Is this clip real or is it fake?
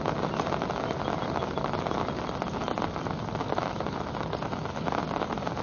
real